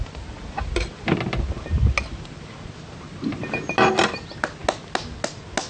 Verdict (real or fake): real